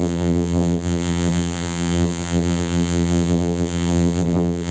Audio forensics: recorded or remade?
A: remade